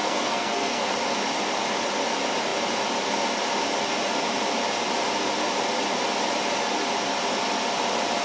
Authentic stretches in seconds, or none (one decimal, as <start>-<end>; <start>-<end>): 0.9-8.2